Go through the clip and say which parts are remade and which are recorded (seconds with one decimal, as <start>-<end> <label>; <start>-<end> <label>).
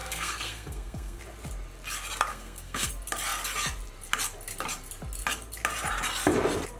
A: 0.0-1.2 remade; 1.2-2.3 recorded; 2.3-2.9 remade; 2.9-6.8 recorded